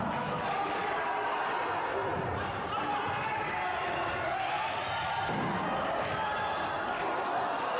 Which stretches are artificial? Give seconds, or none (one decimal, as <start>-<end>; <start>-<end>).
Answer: none